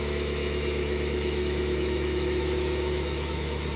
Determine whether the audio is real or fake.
fake